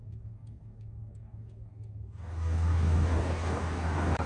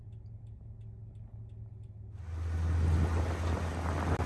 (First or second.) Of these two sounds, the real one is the second